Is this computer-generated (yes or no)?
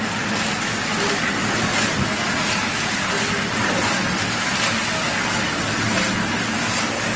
no